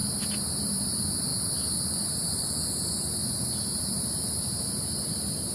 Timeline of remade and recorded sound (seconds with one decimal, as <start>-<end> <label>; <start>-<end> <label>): 0.0-5.5 recorded